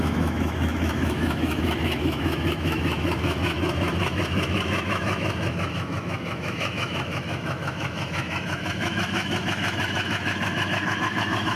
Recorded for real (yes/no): no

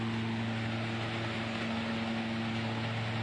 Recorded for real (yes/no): yes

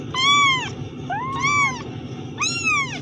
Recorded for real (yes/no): yes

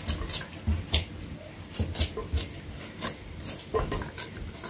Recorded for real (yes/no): yes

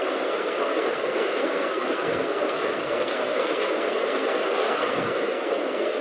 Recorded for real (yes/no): no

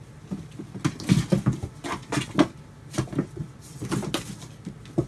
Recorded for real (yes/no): yes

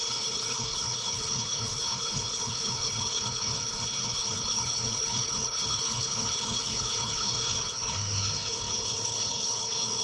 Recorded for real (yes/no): no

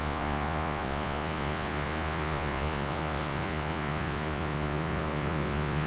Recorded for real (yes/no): no